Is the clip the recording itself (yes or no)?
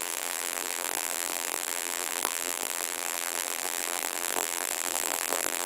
no